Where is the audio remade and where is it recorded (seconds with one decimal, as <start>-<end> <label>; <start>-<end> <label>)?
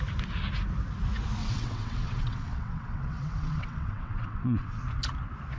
0.0-1.4 recorded; 1.4-4.8 remade; 4.8-5.6 recorded